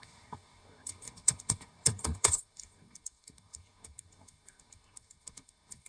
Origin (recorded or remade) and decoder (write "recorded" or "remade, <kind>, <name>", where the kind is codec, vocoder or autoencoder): remade, codec, SNAC